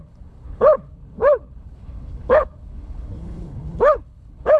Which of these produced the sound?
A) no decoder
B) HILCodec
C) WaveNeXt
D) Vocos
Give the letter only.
B